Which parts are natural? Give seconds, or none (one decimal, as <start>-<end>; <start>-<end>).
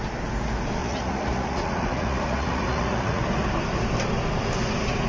0.0-0.8; 3.2-5.1